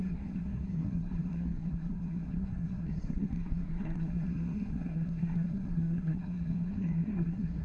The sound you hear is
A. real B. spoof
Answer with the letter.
B